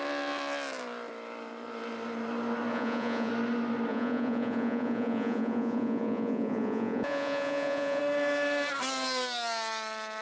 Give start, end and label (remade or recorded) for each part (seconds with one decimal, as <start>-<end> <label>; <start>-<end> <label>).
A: 0.0-2.7 recorded; 2.7-3.3 remade; 3.3-3.9 recorded; 3.9-8.0 remade; 8.0-10.2 recorded

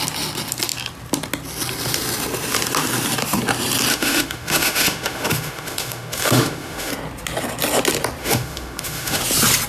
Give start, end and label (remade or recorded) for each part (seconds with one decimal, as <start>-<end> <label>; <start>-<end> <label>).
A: 0.0-3.9 recorded; 3.9-6.9 remade; 6.9-8.2 recorded; 8.2-9.2 remade; 9.2-9.7 recorded

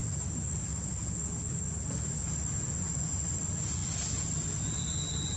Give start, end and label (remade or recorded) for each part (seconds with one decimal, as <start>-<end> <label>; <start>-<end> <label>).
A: 0.0-5.4 recorded

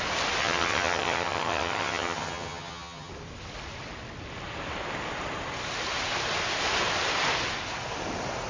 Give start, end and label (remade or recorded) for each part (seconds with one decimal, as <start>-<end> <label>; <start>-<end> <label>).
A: 0.0-0.4 recorded; 0.4-3.1 remade; 3.1-8.5 recorded

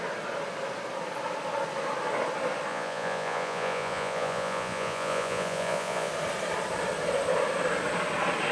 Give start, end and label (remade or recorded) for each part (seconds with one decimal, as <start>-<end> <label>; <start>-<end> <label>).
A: 0.0-2.7 recorded; 2.7-6.1 remade; 6.1-8.5 recorded

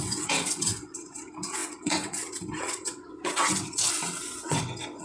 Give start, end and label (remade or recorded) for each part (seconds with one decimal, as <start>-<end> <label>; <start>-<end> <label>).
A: 0.0-5.0 remade